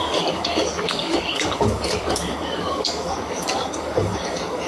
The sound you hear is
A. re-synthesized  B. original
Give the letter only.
A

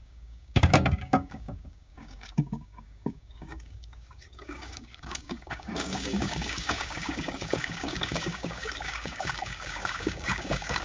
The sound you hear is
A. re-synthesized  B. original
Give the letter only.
A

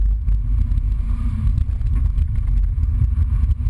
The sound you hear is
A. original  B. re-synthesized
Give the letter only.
A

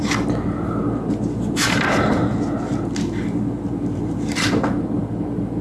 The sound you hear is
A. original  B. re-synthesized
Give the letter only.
A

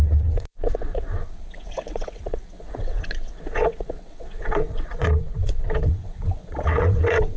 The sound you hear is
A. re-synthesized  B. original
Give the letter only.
A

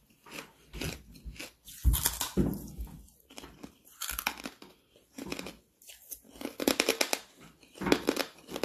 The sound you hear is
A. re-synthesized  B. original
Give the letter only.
B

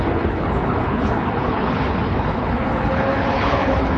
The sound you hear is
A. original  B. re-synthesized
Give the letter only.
B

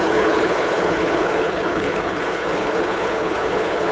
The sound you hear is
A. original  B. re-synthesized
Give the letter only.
B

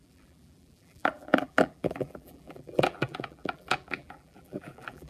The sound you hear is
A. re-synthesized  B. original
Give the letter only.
A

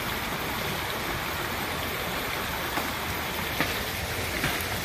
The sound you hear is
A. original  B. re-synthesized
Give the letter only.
A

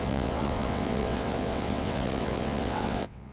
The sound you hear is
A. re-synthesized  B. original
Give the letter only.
A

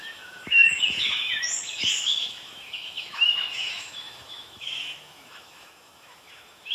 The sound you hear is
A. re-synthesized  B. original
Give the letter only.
A